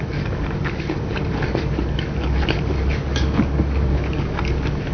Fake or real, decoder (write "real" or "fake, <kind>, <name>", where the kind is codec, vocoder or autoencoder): fake, codec, DAC